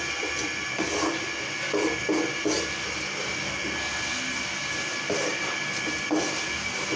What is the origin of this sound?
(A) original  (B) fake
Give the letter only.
A